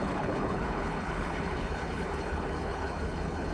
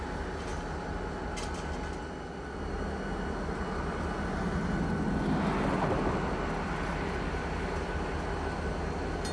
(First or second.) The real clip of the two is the second